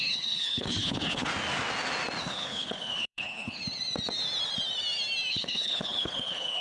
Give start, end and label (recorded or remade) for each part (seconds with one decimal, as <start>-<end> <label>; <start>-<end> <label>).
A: 0.0-1.3 remade; 1.3-2.2 recorded; 2.2-3.6 remade; 3.6-5.3 recorded; 5.3-6.6 remade